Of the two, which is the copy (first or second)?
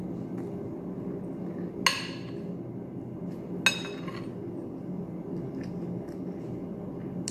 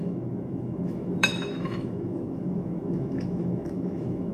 second